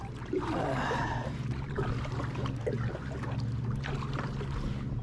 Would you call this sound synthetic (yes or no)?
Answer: no